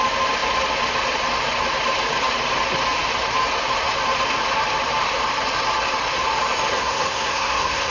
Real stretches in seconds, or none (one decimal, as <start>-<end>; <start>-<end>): 0.0-6.7